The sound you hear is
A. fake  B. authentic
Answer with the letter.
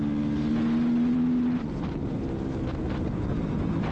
B